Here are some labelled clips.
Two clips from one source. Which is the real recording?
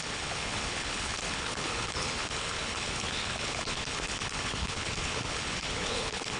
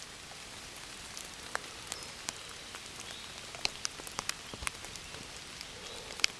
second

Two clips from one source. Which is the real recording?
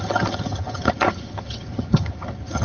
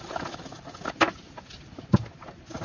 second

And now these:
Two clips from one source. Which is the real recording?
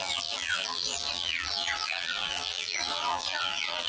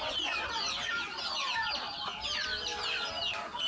second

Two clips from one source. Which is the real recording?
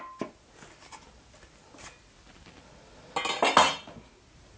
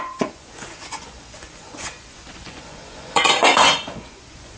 first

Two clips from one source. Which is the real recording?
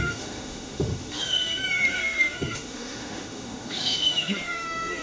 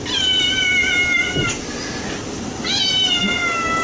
second